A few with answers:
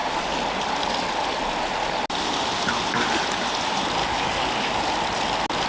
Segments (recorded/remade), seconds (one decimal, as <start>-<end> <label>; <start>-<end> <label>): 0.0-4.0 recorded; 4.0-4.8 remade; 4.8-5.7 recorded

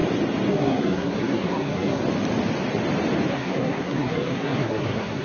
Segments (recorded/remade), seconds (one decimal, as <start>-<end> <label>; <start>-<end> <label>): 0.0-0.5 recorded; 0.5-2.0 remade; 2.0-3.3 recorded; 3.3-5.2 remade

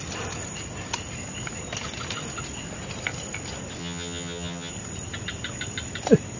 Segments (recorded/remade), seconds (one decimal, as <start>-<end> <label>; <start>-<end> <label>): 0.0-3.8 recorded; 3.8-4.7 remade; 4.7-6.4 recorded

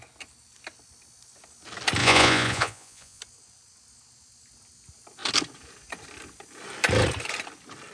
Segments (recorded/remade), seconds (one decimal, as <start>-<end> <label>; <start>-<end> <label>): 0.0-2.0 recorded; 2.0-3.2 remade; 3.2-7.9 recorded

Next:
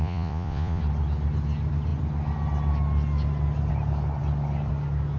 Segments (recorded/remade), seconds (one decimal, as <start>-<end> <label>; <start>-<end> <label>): 0.0-0.8 remade; 0.8-5.2 recorded

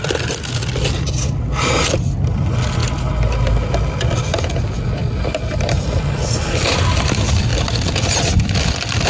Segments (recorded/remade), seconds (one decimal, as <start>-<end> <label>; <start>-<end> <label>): 0.0-9.1 recorded